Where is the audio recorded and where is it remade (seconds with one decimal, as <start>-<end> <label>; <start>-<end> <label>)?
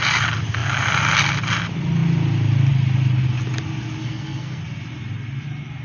0.0-4.0 recorded; 4.0-4.6 remade; 4.6-5.8 recorded